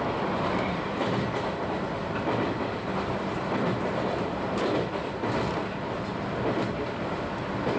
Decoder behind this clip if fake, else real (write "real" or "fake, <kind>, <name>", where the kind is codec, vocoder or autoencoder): real